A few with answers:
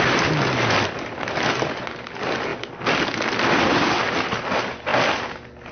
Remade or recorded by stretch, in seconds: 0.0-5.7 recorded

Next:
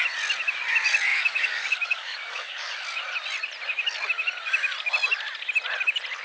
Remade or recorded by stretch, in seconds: 0.0-1.1 recorded; 1.1-2.8 remade; 2.8-6.2 recorded

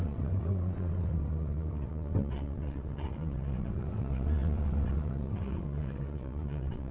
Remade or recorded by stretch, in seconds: 0.0-6.9 remade

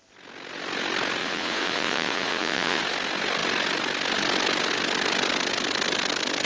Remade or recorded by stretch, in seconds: 0.0-1.2 recorded; 1.2-2.8 remade; 2.8-6.5 recorded

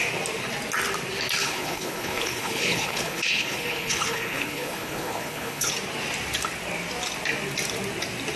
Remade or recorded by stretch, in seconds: 0.0-1.4 recorded; 1.4-5.7 remade; 5.7-8.4 recorded

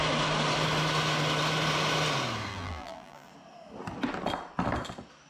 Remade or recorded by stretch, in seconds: 0.0-2.5 recorded; 2.5-3.3 remade; 3.3-5.3 recorded

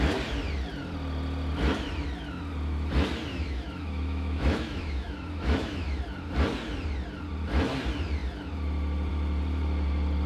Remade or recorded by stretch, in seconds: 0.0-3.3 recorded; 3.3-6.0 remade; 6.0-10.3 recorded

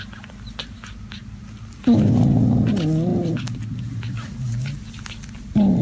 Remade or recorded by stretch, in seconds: 0.0-5.8 recorded